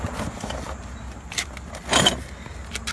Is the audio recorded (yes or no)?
yes